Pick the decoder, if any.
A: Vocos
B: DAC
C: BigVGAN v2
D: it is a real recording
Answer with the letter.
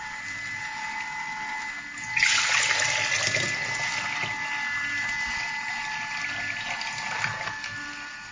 D